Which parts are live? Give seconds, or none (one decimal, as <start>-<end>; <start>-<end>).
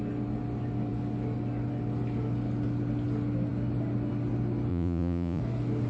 0.0-4.7; 5.4-5.9